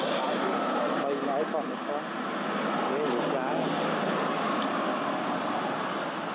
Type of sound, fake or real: real